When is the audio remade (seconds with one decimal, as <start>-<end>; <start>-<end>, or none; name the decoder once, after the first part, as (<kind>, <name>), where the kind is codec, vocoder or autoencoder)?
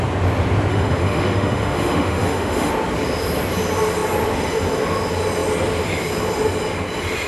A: 0.7-2.7 (autoencoder, DAC-VAE)